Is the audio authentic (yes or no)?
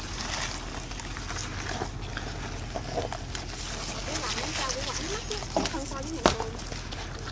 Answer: yes